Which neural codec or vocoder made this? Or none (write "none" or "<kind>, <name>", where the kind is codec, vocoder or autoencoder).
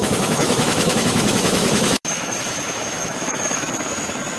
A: autoencoder, DAC-VAE